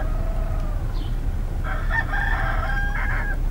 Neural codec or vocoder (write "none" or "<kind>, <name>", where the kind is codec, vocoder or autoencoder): none